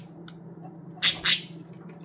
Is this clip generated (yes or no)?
no